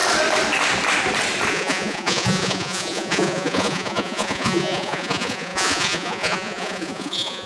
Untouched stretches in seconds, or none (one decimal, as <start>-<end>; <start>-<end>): 0.0-1.5